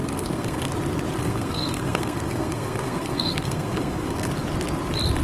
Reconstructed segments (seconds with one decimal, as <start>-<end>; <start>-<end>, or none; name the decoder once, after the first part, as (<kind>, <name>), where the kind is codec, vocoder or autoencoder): 0.0-0.7 (codec, SNAC); 1.2-4.3